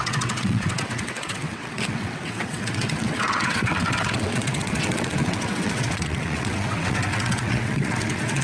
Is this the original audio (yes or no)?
no